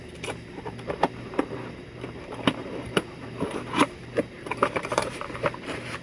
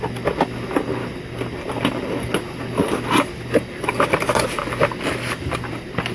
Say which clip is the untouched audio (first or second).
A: second